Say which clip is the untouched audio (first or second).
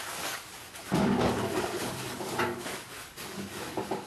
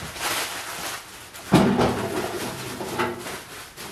second